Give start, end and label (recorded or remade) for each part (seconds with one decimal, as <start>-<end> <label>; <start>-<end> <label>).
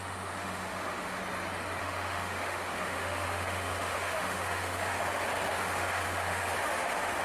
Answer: 0.0-1.2 remade; 1.2-1.8 recorded; 1.8-5.0 remade; 5.0-5.5 recorded; 5.5-7.2 remade